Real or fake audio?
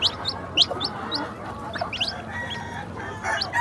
real